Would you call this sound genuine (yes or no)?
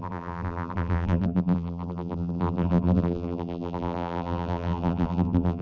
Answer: no